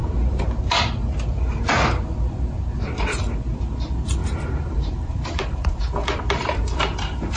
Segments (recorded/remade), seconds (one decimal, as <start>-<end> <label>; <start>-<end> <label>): 0.0-0.6 remade; 0.6-4.2 recorded; 4.2-5.8 remade; 5.8-7.4 recorded